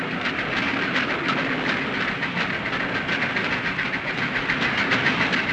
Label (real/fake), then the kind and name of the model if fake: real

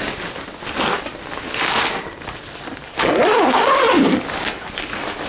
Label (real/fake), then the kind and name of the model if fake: real